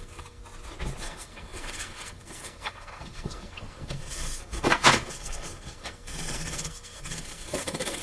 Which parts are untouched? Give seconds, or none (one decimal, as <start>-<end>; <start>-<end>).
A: 0.4-1.0